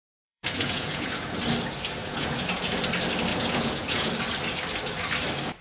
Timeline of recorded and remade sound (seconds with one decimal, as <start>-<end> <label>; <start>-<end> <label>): 0.0-1.4 remade; 1.4-2.0 recorded; 2.0-2.8 remade; 2.8-3.3 recorded; 3.3-4.1 remade; 4.1-5.6 recorded